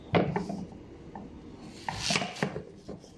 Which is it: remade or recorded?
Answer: recorded